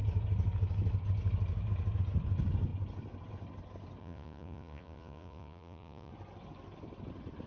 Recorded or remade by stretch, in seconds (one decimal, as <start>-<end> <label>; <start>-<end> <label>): 0.0-4.0 recorded; 4.0-6.1 remade; 6.1-7.5 recorded